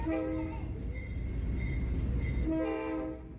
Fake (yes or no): no